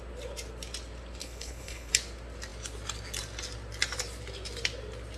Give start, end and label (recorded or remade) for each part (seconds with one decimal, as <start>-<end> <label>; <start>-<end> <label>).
0.0-1.2 recorded; 1.2-1.9 remade; 1.9-5.2 recorded